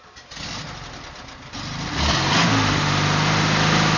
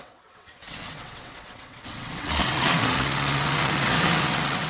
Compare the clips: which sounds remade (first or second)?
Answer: second